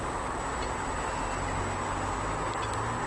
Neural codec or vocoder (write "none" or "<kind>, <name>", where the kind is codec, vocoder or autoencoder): none